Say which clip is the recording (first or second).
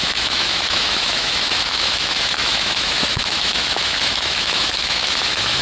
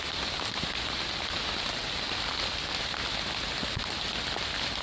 second